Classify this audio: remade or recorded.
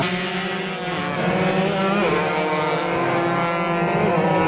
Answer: recorded